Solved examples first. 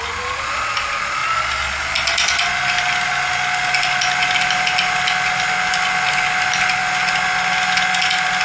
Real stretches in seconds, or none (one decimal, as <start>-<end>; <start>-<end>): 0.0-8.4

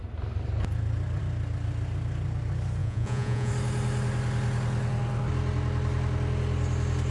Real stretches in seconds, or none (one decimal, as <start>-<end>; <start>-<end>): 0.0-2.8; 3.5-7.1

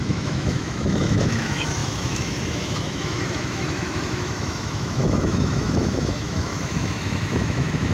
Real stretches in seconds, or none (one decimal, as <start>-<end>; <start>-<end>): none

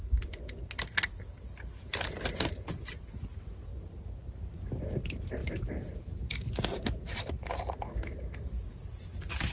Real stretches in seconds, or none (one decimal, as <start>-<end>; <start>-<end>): 0.0-9.5

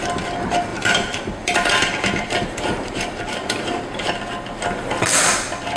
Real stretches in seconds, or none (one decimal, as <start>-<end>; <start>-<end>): 0.0-0.7; 4.2-5.8

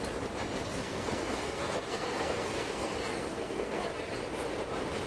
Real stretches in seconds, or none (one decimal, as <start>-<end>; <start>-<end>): 0.0-0.7; 3.8-5.1

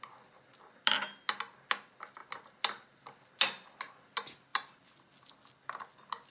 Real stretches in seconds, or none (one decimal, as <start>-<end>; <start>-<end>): 0.0-6.3

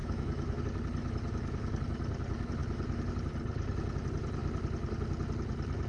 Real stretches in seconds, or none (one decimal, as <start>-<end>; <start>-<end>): 0.6-1.0; 1.8-2.6; 3.1-5.9